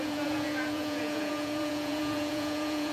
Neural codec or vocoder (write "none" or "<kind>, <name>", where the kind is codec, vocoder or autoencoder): vocoder, Vocos